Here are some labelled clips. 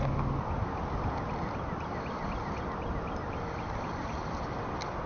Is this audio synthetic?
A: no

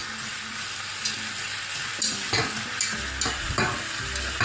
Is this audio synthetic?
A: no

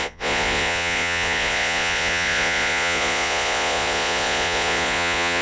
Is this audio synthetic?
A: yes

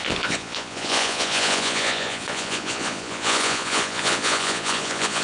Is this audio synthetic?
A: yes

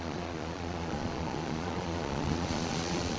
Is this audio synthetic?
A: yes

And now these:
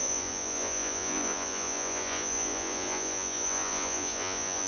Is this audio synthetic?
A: yes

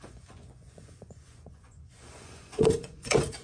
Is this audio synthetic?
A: yes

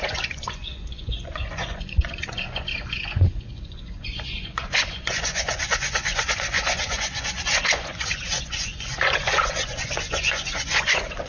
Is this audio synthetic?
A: yes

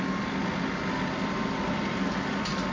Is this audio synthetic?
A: no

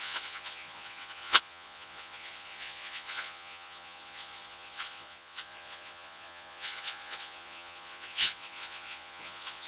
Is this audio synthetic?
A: yes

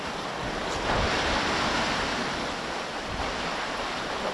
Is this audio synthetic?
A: no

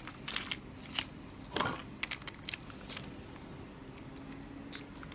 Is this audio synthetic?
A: no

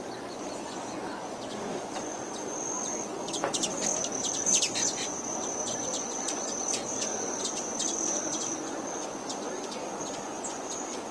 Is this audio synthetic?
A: yes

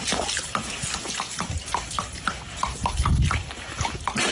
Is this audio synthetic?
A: no